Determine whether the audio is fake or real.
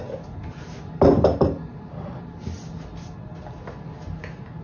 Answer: real